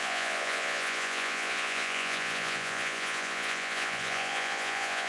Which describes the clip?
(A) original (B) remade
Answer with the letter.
B